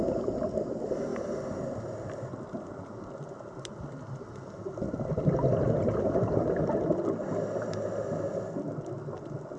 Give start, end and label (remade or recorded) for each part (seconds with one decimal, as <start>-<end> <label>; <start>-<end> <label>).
0.0-9.6 recorded